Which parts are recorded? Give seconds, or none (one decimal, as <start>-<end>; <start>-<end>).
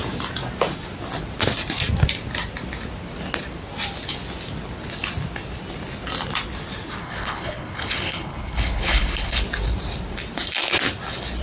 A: 0.0-7.0; 9.4-11.4